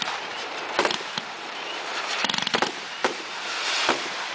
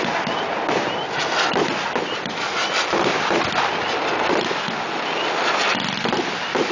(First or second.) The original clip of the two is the second